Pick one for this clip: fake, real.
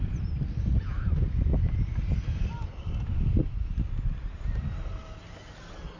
real